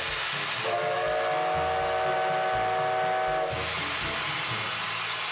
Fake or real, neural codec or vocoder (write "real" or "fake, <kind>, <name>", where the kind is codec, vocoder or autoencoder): real